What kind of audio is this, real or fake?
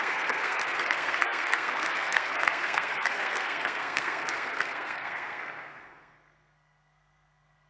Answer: fake